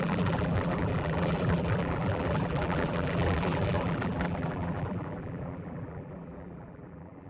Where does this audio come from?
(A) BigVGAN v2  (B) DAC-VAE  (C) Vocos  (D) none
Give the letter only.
A